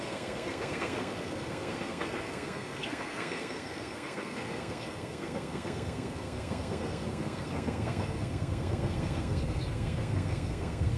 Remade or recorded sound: remade